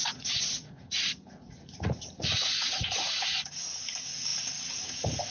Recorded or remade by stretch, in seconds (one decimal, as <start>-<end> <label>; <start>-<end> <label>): 0.0-3.2 remade; 3.2-5.3 recorded